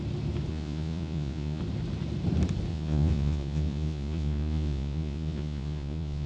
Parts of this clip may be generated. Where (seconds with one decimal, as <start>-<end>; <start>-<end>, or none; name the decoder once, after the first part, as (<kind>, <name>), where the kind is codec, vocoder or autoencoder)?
0.5-1.6 (vocoder, Vocos); 2.7-6.3